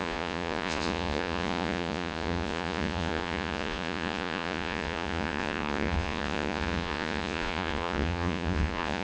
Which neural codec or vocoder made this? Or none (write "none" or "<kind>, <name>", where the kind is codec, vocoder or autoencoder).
vocoder, Vocos